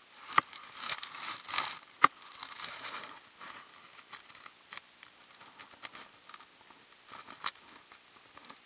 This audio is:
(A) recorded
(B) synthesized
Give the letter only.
A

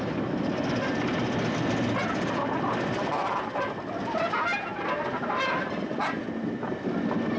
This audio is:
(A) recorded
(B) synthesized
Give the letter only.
A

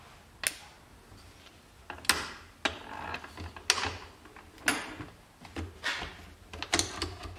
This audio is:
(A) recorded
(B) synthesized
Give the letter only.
A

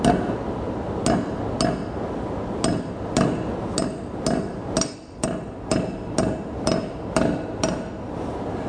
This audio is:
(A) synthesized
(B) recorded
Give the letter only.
B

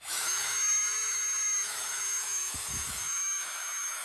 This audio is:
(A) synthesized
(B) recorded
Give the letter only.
A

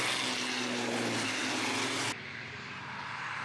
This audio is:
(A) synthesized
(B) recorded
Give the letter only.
B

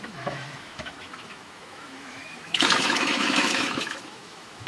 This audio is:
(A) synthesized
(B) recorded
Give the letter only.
A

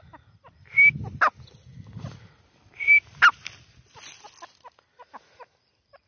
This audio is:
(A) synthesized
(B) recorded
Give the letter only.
B